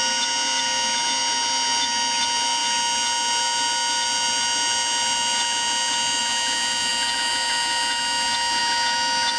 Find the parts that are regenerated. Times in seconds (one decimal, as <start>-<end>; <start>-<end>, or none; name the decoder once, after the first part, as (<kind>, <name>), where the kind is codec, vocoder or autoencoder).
none